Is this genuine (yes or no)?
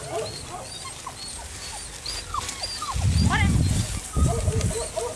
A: yes